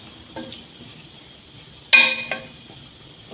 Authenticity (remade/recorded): recorded